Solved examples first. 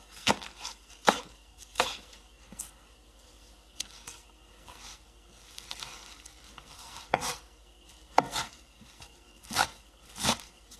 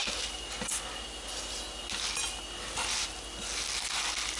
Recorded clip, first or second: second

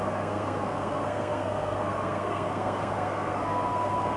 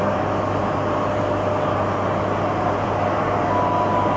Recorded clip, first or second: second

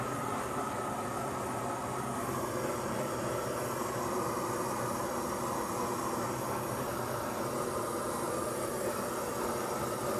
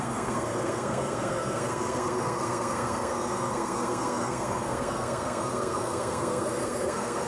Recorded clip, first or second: first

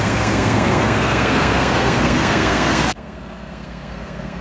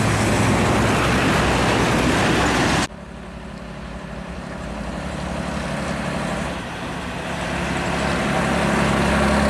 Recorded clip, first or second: second